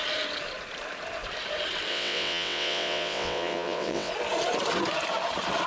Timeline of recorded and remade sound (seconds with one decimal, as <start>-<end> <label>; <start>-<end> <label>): 0.0-1.9 recorded; 1.9-4.1 remade; 4.1-5.7 recorded